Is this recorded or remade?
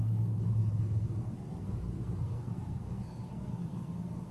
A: remade